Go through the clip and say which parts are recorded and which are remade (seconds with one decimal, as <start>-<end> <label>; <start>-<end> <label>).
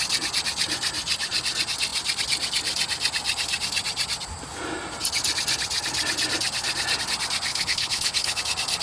0.0-7.5 recorded; 7.5-8.4 remade; 8.4-8.8 recorded